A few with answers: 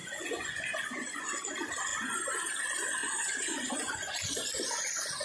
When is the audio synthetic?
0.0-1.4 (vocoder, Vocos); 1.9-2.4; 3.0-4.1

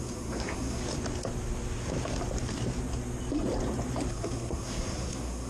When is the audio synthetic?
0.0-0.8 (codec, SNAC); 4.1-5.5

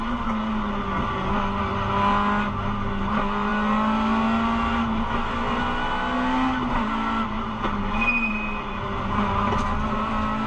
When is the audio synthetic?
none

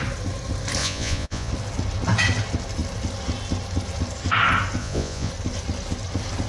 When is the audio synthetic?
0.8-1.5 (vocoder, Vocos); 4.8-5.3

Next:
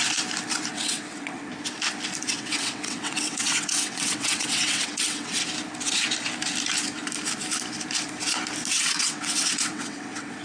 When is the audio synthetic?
0.7-1.5 (vocoder, WaveNeXt); 2.3-5.4; 8.7-10.4

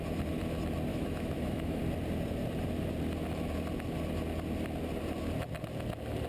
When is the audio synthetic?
0.9-1.8 (autoencoder, DAC-VAE)

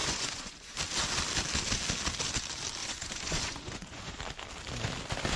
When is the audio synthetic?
0.0-0.8 (vocoder, Vocos); 2.8-4.1